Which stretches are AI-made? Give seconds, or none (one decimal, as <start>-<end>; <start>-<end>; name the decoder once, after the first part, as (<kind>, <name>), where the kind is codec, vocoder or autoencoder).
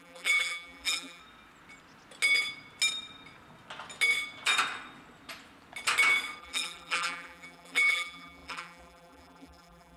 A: 0.0-1.2 (vocoder, BigVGAN v2); 6.4-10.0